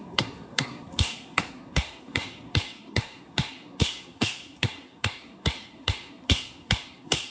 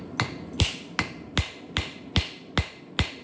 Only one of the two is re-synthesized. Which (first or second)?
first